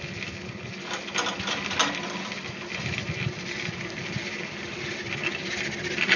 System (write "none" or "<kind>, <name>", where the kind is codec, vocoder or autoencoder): none